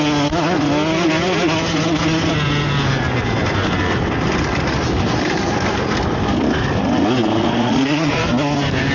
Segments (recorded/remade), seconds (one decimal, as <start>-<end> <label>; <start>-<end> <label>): 0.0-7.4 recorded; 7.4-8.2 remade; 8.2-8.9 recorded